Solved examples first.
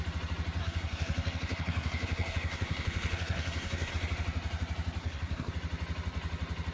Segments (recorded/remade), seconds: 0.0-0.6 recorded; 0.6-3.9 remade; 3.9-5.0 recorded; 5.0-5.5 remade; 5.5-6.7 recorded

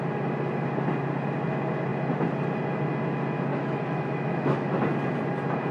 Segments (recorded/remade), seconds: 0.0-3.5 recorded; 3.5-4.8 remade; 4.8-5.7 recorded

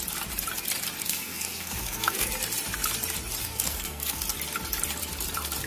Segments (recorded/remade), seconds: 0.0-1.0 recorded; 1.0-2.3 remade; 2.3-3.4 recorded; 3.4-4.2 remade; 4.2-5.7 recorded

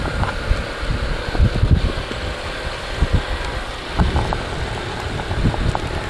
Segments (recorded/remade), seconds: 0.0-6.1 recorded

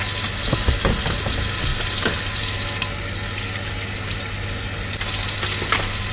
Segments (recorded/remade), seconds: 0.0-6.1 recorded